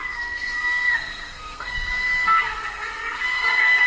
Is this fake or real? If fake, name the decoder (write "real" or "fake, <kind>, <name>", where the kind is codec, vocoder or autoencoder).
fake, codec, SNAC